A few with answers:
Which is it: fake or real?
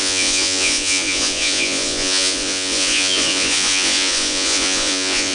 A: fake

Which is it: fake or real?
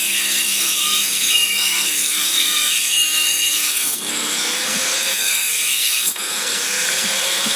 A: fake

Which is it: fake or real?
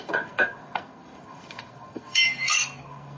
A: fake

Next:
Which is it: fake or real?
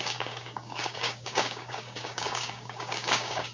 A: fake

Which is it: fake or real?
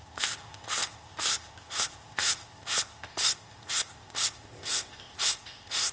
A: fake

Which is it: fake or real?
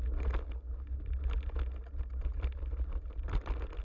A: real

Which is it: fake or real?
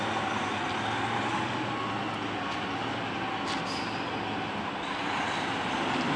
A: real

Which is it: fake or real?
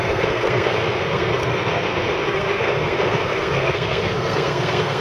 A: fake